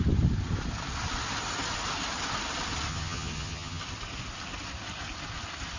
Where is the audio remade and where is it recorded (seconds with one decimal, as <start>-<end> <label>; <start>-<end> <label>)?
0.0-2.9 recorded; 2.9-3.8 remade; 3.8-5.8 recorded